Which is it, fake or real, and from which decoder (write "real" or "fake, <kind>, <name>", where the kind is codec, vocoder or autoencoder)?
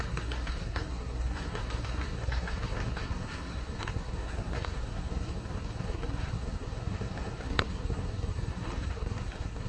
fake, codec, SNAC